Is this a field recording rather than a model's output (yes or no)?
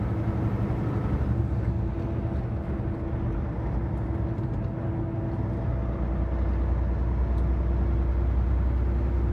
yes